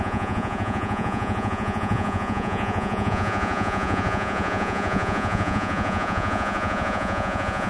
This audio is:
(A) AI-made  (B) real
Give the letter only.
A